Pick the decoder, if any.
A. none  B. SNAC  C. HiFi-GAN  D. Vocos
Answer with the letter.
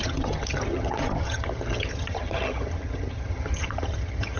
C